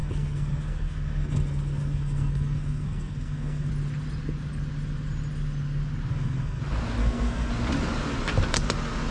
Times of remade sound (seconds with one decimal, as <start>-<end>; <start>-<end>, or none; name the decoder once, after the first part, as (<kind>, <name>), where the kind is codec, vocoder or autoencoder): 0.0-3.7 (codec, SNAC); 6.1-6.6; 7.0-7.5